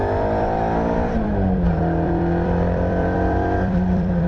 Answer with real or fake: fake